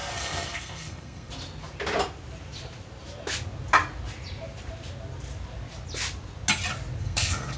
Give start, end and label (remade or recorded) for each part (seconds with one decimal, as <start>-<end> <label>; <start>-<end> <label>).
0.0-1.3 remade; 1.3-7.0 recorded; 7.0-7.6 remade